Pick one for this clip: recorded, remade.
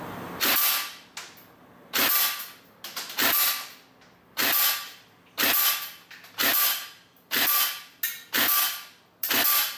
recorded